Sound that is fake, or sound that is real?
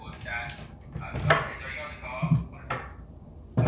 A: real